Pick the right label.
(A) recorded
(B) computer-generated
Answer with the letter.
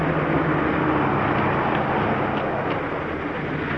A